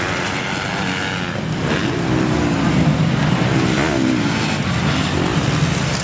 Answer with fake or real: real